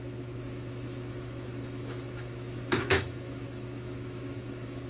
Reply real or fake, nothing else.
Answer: fake